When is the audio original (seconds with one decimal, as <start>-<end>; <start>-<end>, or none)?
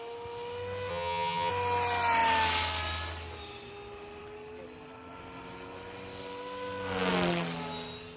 0.0-0.9; 1.5-8.2